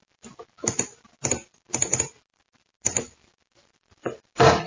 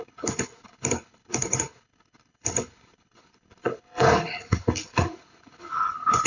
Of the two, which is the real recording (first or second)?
first